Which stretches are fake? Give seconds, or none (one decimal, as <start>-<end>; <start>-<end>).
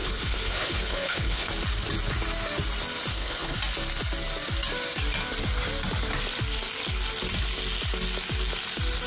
0.0-1.5; 3.1-3.6